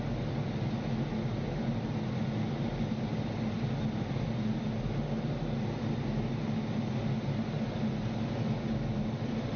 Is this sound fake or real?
real